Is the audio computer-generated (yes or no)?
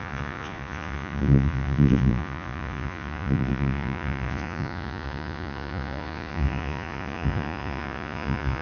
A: yes